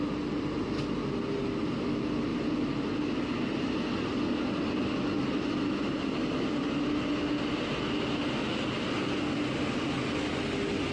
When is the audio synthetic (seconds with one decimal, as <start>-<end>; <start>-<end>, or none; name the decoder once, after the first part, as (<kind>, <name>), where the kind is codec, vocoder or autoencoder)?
none